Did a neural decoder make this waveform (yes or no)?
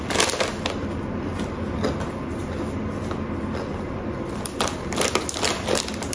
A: no